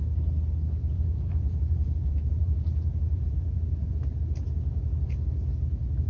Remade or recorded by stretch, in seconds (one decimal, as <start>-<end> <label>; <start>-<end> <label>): 0.0-0.8 recorded; 0.8-3.9 remade; 3.9-6.1 recorded